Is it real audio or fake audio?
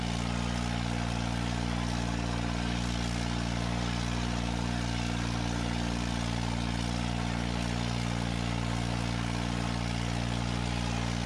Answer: real